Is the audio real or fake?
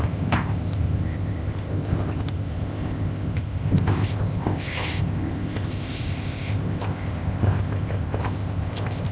fake